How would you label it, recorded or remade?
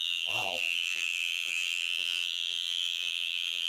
remade